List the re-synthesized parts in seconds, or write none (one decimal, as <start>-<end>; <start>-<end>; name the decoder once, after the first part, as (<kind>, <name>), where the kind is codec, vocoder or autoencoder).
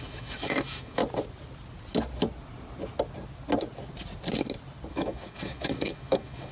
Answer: 0.0-1.0 (autoencoder, DAC-VAE); 4.9-6.5